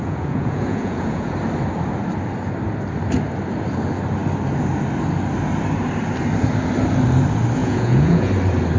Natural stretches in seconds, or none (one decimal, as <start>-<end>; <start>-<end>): 1.3-7.6; 8.3-8.8